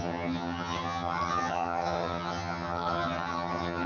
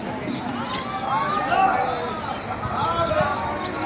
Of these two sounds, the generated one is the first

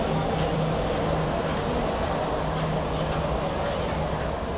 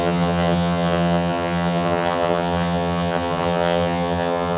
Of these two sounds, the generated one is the second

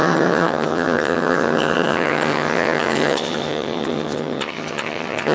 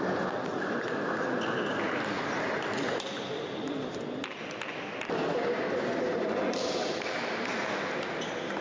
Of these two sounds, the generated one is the first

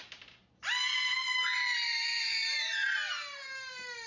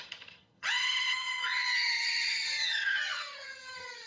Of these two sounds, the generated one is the second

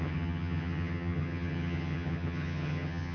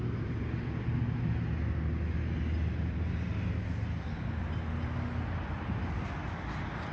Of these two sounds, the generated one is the first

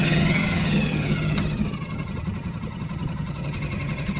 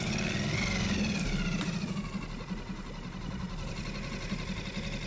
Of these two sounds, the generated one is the first